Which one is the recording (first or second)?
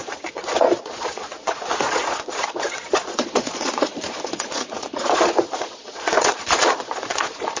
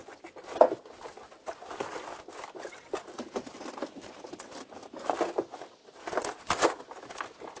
second